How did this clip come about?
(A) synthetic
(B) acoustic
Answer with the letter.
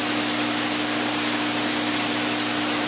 B